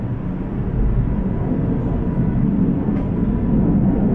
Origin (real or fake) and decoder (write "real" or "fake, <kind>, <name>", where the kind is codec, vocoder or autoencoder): real